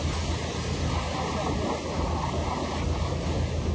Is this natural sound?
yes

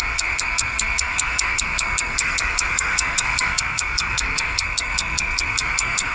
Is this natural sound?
no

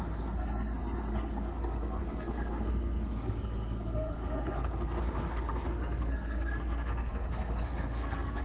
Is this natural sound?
no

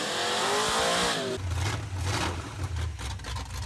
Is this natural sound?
yes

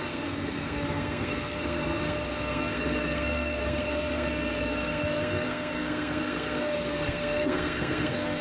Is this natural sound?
no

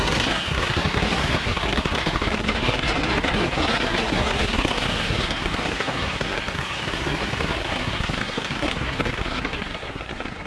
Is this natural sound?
no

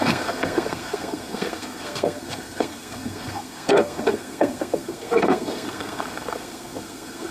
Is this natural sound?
no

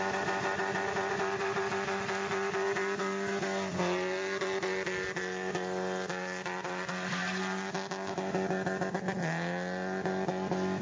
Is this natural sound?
yes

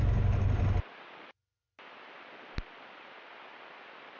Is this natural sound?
yes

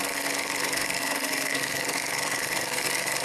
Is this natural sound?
no